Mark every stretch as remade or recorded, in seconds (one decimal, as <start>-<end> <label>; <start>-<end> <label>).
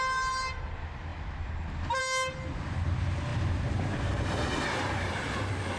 0.0-3.3 recorded; 3.3-4.2 remade; 4.2-5.8 recorded